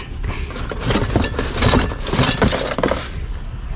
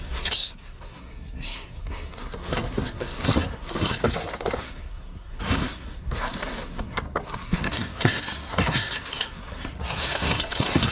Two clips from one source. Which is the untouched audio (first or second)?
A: first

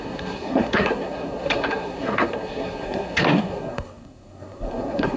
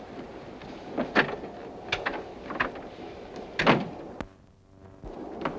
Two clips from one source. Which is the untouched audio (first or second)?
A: second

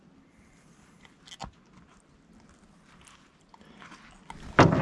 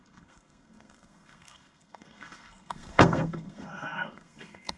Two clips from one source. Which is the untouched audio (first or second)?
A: first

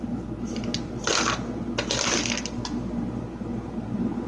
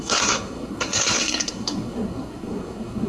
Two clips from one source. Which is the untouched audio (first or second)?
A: first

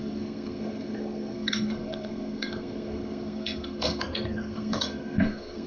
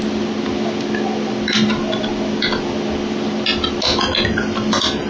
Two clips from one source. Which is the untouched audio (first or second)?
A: second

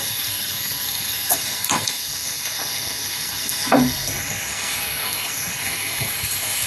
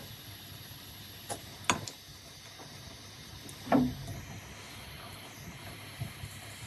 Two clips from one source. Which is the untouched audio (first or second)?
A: second